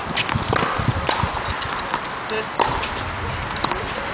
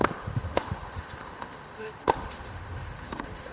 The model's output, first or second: second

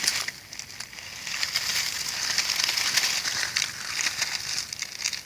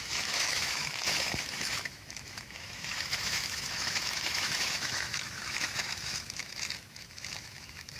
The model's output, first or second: second